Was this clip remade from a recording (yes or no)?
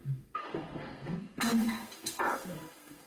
yes